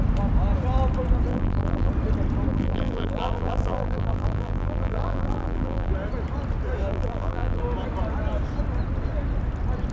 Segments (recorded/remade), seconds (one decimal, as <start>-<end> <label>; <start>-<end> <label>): 0.0-1.3 recorded; 1.3-1.9 remade; 1.9-2.5 recorded; 2.5-5.9 remade; 5.9-6.9 recorded; 6.9-7.6 remade; 7.6-9.9 recorded